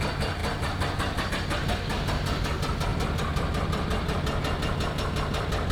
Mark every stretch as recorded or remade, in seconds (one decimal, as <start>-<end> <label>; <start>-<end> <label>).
0.0-2.9 recorded; 2.9-5.7 remade